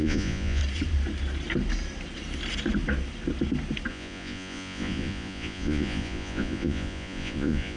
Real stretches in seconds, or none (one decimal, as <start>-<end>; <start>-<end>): 0.6-3.9